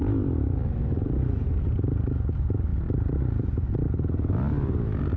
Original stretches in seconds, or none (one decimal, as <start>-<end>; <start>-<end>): 0.0-5.2